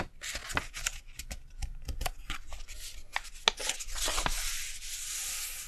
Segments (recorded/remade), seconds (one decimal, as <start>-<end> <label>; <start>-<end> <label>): 0.0-1.6 recorded; 1.6-2.1 remade; 2.1-5.7 recorded